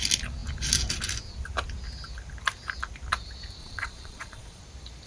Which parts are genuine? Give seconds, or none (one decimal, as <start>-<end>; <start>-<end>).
0.0-3.6; 4.6-5.1